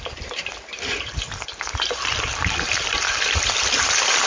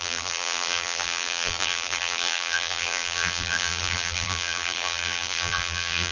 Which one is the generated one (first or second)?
second